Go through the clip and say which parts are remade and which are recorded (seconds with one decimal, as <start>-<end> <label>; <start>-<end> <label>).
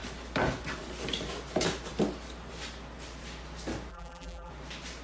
0.0-3.9 recorded; 3.9-4.5 remade; 4.5-5.0 recorded